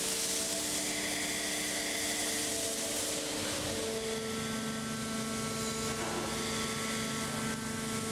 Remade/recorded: recorded